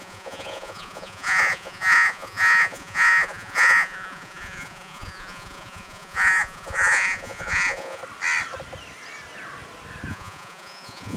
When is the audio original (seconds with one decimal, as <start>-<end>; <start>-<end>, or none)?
8.0-10.1